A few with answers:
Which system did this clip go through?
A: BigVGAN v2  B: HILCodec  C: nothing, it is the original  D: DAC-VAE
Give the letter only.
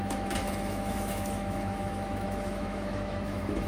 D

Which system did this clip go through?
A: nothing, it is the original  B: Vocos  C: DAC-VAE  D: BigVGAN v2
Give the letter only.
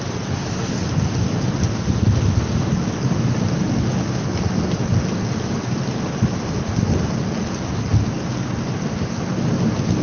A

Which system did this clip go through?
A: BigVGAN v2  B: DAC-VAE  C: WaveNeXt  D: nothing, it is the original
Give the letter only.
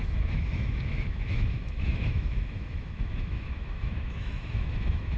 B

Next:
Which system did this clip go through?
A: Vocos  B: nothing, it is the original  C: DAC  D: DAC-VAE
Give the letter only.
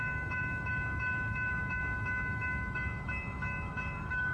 D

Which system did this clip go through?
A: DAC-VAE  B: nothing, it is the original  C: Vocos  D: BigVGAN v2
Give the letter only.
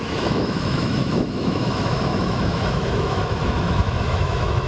A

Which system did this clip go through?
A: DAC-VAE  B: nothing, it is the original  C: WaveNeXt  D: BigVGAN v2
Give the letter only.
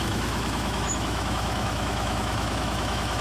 A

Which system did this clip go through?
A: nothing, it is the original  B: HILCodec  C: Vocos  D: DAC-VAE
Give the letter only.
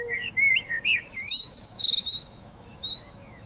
D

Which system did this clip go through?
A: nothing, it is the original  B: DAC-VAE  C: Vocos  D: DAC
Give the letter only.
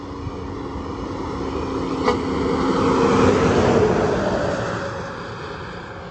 A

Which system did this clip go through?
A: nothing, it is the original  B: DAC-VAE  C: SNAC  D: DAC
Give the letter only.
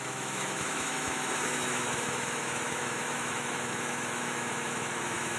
B